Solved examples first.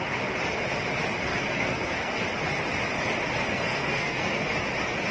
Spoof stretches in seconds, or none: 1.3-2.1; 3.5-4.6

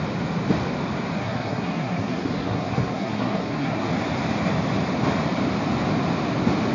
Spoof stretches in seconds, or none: 1.2-3.9

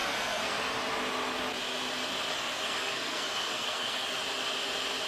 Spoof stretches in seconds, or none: 0.0-0.6; 2.3-4.2

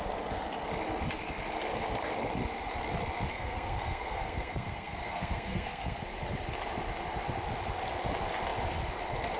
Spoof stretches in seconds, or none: 3.3-6.0

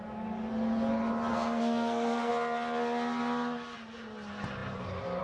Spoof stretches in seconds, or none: 1.3-2.3

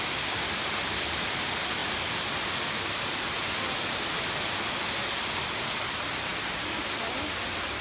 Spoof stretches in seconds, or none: none

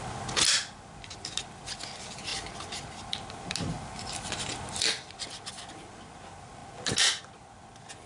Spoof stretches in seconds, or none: none